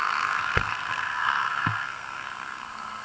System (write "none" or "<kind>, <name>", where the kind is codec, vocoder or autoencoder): codec, SNAC